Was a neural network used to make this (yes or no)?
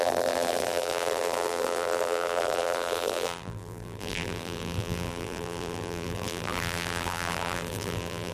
yes